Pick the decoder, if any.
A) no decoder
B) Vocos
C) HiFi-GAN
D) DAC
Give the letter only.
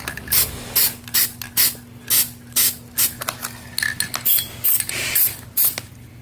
A